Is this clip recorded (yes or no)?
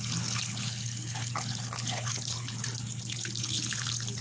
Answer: no